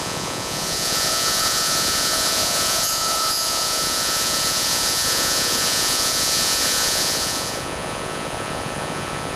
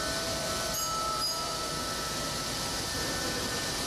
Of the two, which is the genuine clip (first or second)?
second